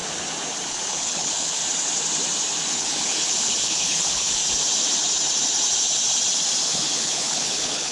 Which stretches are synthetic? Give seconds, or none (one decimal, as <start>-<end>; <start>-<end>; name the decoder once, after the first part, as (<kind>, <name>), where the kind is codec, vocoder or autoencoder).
0.7-1.6 (codec, HILCodec); 2.7-4.4; 6.7-7.9

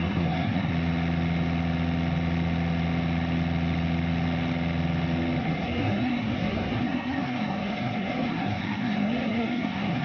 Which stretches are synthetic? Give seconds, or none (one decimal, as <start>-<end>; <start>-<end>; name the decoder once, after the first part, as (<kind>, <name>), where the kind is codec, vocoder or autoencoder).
0.0-0.7 (codec, SNAC); 5.4-10.0

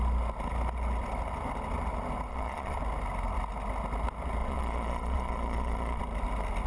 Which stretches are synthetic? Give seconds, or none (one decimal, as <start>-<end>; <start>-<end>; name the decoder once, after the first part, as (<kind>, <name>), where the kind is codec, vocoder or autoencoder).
2.3-2.8 (vocoder, Vocos); 4.4-6.0

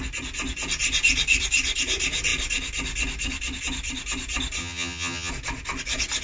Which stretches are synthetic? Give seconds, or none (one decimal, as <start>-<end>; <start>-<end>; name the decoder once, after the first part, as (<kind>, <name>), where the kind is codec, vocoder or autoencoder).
4.6-5.3 (vocoder, HiFi-GAN)

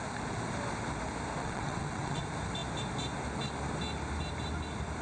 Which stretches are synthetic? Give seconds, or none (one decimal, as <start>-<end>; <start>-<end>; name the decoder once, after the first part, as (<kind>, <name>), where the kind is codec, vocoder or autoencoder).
1.4-2.2 (vocoder, WaveNeXt)

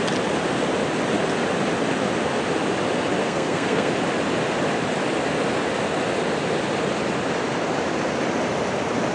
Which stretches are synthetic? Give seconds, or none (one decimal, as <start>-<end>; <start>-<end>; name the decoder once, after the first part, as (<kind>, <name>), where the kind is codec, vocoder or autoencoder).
3.2-3.9 (codec, SNAC)

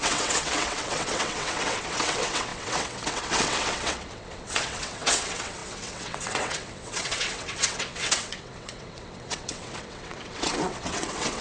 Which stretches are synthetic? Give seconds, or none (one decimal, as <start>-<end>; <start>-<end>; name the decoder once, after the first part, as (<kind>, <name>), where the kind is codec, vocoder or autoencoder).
0.0-11.4 (vocoder, WaveNeXt)

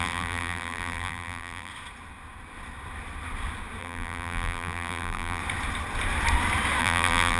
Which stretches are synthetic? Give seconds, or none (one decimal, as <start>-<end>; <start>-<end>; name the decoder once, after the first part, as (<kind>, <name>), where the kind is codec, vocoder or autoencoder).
0.0-1.7 (vocoder, BigVGAN v2); 3.8-5.4; 6.8-7.4